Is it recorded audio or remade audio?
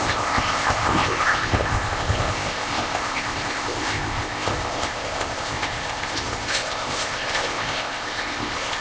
remade